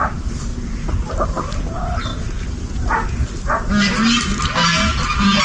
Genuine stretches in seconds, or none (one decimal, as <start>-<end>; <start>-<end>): 0.5-1.1; 2.1-5.4